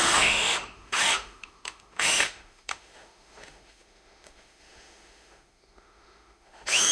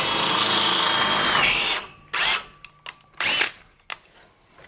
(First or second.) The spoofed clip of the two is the first